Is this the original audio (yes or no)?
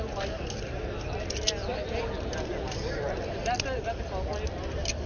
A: yes